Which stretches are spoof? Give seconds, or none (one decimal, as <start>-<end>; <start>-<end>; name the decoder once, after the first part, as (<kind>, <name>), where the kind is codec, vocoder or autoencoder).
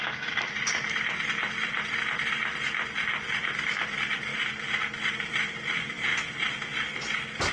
0.0-4.3 (vocoder, BigVGAN v2); 5.1-6.1